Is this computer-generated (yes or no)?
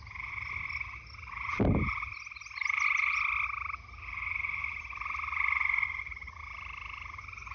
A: no